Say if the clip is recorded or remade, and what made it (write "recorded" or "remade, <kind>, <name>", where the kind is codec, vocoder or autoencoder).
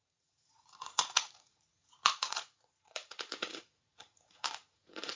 remade, vocoder, Vocos